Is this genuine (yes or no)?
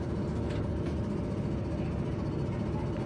yes